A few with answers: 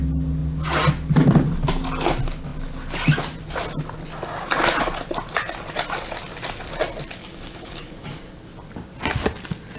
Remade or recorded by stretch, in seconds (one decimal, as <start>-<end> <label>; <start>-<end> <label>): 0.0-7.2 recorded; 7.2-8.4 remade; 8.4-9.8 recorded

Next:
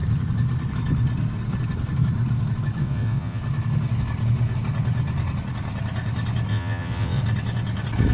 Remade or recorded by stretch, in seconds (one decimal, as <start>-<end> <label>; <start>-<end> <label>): 0.0-2.8 recorded; 2.8-3.4 remade; 3.4-6.5 recorded; 6.5-7.2 remade; 7.2-8.1 recorded

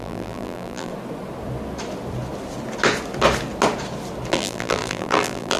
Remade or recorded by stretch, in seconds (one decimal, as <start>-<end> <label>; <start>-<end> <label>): 0.0-0.9 remade; 0.9-4.3 recorded; 4.3-5.6 remade